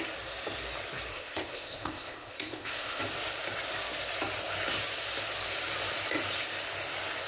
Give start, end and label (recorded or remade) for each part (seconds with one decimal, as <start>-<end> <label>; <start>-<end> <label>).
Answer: 0.0-1.1 recorded; 1.1-3.0 remade; 3.0-7.3 recorded